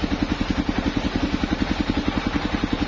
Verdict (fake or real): real